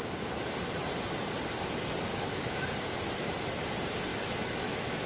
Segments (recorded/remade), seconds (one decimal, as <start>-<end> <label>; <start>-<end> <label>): 0.0-2.1 recorded; 2.1-2.7 remade; 2.7-4.1 recorded; 4.1-5.1 remade